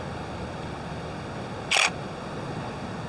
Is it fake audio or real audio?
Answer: real